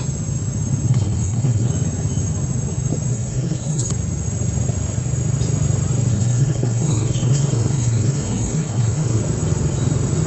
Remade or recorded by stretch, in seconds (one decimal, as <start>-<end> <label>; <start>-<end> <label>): 0.0-0.9 recorded; 0.9-1.7 remade; 1.7-3.1 recorded; 3.1-3.9 remade; 3.9-6.1 recorded; 6.1-9.2 remade; 9.2-10.3 recorded

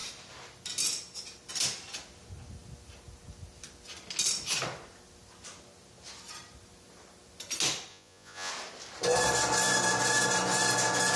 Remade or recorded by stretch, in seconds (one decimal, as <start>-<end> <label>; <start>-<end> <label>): 0.0-7.9 recorded; 7.9-8.5 remade; 8.5-11.2 recorded

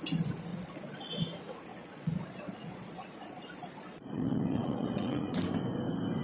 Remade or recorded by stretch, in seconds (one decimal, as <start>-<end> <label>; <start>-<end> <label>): 0.0-0.5 recorded; 0.5-1.1 remade; 1.1-1.7 recorded; 1.7-5.4 remade; 5.4-6.2 recorded

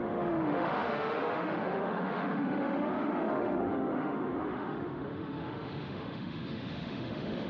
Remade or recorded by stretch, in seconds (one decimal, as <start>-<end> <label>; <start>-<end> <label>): 0.0-7.5 remade

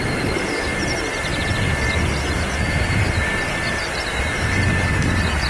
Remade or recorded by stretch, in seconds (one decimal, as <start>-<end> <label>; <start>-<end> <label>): 0.0-5.5 recorded

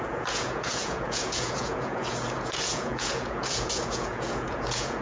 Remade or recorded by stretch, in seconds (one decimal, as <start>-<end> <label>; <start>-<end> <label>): 0.0-5.0 remade